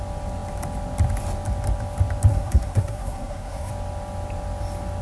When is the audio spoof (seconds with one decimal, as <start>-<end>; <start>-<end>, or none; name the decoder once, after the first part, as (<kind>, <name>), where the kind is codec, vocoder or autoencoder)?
2.3-3.7 (codec, SNAC)